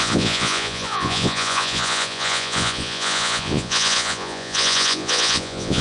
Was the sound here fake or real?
fake